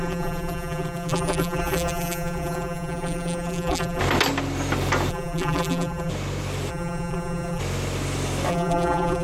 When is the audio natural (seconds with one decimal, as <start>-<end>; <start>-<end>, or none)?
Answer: 4.0-5.1; 6.1-6.7; 7.6-8.5